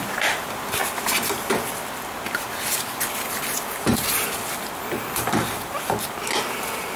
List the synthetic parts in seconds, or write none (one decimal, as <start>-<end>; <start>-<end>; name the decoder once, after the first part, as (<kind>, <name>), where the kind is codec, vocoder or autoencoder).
none